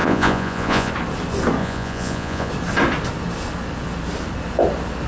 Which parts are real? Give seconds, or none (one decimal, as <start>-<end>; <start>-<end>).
0.9-1.6; 2.5-5.1